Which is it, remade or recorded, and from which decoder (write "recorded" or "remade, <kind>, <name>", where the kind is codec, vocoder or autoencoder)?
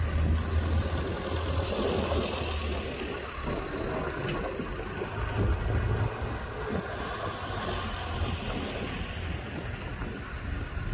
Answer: recorded